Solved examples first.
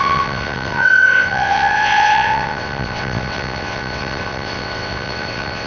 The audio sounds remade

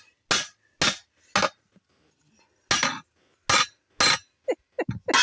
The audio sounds recorded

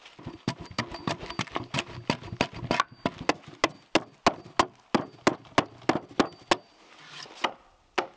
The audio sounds recorded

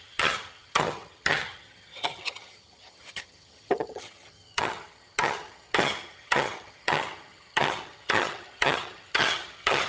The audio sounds remade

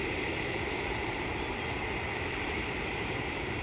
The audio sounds remade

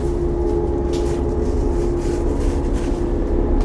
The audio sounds recorded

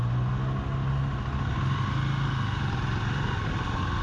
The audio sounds recorded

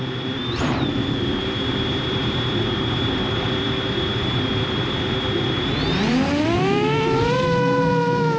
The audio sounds remade